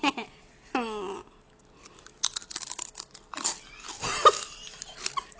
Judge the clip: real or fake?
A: real